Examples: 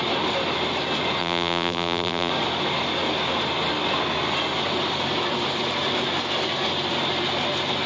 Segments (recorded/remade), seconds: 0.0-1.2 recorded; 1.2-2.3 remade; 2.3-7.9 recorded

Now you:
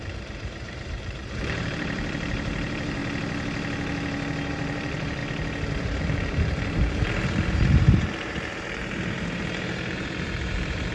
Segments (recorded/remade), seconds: 0.0-3.0 remade; 3.0-4.5 recorded; 4.5-5.2 remade; 5.2-6.0 recorded; 6.0-10.9 remade

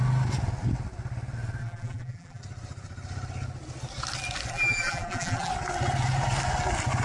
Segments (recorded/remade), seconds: 0.0-1.6 recorded; 1.6-2.4 remade; 2.4-4.5 recorded; 4.5-5.5 remade; 5.5-7.0 recorded